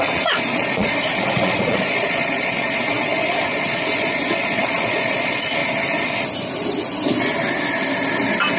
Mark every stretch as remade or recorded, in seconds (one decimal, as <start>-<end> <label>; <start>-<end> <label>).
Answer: 0.0-5.6 remade; 5.6-8.6 recorded